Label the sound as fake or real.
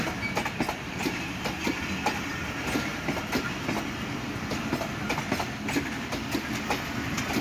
real